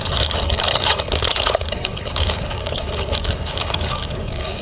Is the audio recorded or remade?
remade